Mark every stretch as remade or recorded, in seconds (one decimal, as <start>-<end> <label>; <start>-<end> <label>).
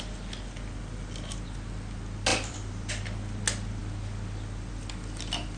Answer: 0.0-2.3 recorded; 2.3-2.9 remade; 2.9-5.6 recorded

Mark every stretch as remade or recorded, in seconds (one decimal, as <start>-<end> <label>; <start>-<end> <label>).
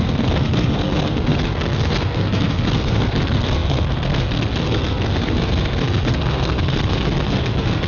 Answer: 0.0-7.9 remade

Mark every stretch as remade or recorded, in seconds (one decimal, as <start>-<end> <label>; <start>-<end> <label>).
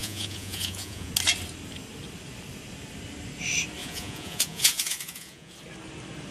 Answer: 0.0-1.1 remade; 1.1-3.8 recorded; 3.8-5.5 remade; 5.5-6.3 recorded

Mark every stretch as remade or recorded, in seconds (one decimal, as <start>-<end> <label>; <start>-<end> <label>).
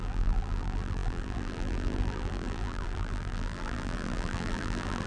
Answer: 0.0-5.1 remade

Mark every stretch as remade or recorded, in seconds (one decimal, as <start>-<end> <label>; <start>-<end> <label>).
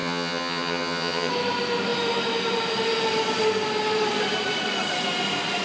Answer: 0.0-1.3 remade; 1.3-5.6 recorded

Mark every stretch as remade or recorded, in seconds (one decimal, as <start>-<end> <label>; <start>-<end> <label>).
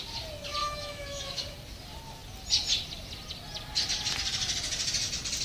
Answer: 0.0-0.6 recorded; 0.6-1.4 remade; 1.4-5.4 recorded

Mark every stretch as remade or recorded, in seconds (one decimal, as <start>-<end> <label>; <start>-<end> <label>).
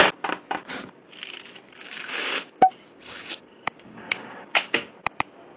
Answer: 0.0-1.8 recorded; 1.8-4.9 remade; 4.9-5.6 recorded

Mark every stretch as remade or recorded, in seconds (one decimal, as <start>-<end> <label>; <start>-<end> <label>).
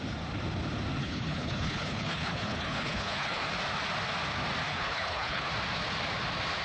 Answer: 0.0-1.0 recorded; 1.0-3.5 remade; 3.5-4.7 recorded; 4.7-5.5 remade; 5.5-6.6 recorded